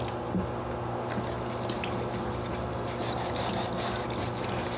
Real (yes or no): yes